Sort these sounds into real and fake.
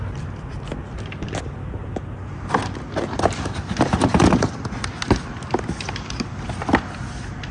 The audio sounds real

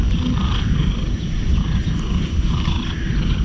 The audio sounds real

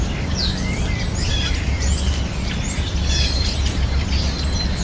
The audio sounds real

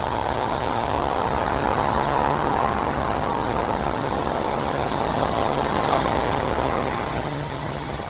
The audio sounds fake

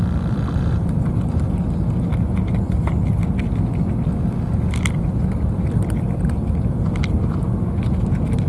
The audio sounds real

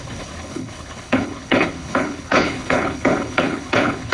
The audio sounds fake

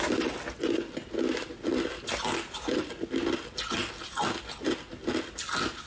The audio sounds real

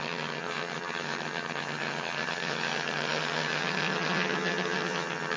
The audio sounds fake